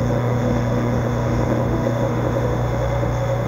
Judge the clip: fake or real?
fake